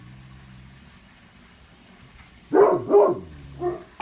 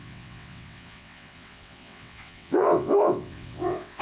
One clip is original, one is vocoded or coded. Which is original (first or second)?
first